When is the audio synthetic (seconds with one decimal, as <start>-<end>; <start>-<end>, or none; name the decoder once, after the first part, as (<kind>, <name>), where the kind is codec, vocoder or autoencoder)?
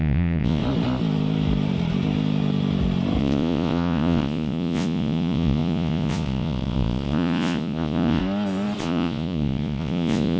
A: 0.0-0.6 (vocoder, Vocos); 3.2-8.2; 8.8-10.4